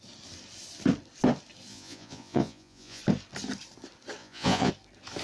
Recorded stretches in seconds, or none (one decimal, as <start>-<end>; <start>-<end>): 0.0-1.7; 3.0-4.2; 4.7-5.2